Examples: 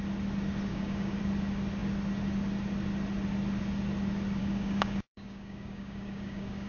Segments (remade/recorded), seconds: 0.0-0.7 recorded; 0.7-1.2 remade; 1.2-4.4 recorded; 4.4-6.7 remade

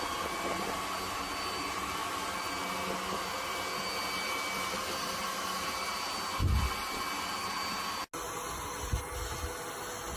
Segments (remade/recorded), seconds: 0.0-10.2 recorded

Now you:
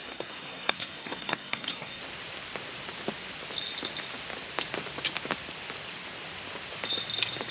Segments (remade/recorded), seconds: 0.0-2.0 remade; 2.0-7.5 recorded

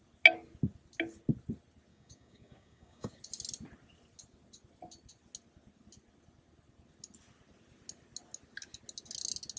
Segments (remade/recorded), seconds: 0.0-1.9 recorded; 1.9-3.2 remade; 3.2-9.6 recorded

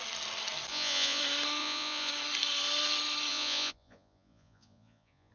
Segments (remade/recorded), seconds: 0.0-0.7 recorded; 0.7-1.2 remade; 1.2-1.6 recorded; 1.6-2.1 remade; 2.1-3.3 recorded; 3.3-5.3 remade

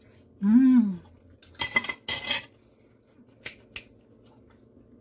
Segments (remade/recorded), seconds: 0.0-5.0 recorded

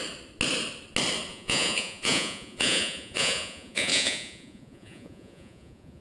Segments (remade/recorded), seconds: 0.0-1.3 recorded; 1.3-6.0 remade